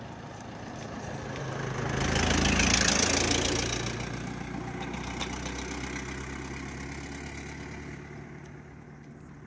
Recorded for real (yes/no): yes